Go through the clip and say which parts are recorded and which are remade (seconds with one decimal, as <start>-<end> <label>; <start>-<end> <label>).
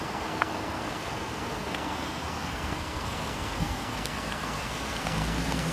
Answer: 0.0-5.7 remade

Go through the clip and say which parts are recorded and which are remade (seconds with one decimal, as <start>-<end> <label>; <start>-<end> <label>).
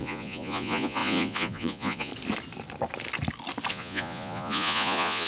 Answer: 0.0-2.1 remade; 2.1-3.7 recorded; 3.7-5.3 remade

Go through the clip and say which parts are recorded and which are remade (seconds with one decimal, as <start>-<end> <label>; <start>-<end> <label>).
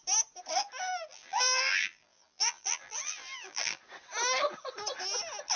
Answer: 0.0-1.1 recorded; 1.1-3.8 remade; 3.8-5.6 recorded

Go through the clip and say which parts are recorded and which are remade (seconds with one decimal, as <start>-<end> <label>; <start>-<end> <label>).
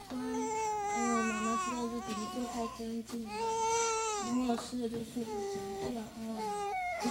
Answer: 0.0-2.4 recorded; 2.4-3.1 remade; 3.1-3.7 recorded; 3.7-4.5 remade; 4.5-5.0 recorded; 5.0-7.1 remade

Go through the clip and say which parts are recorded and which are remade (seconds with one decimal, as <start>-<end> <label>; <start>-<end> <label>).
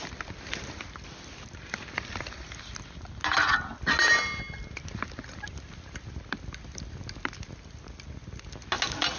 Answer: 0.0-9.2 recorded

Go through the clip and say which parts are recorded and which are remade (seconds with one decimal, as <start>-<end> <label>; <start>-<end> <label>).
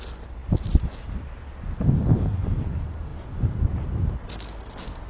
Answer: 0.0-5.1 recorded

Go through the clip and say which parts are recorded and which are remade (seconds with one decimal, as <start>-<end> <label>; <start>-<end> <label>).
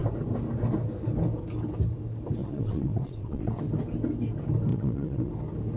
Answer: 0.0-2.4 recorded; 2.4-3.6 remade; 3.6-4.7 recorded; 4.7-5.3 remade; 5.3-5.8 recorded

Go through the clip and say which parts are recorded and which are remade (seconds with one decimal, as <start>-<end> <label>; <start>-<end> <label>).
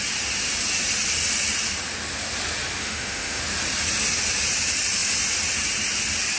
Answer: 0.0-2.8 recorded; 2.8-3.4 remade; 3.4-6.4 recorded